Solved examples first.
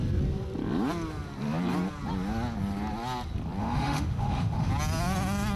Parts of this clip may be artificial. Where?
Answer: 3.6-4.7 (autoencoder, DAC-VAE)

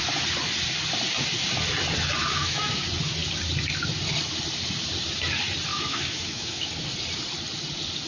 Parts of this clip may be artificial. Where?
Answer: 2.2-2.8 (autoencoder, DAC-VAE); 5.7-6.7